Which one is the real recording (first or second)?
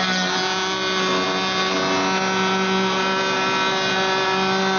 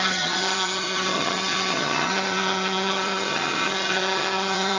first